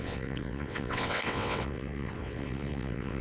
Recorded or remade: remade